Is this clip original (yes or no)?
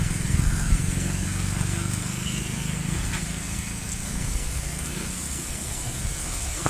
no